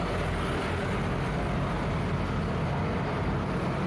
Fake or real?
real